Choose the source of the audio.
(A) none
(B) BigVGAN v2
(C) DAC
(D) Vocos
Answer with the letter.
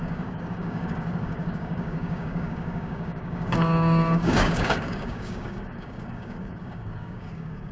C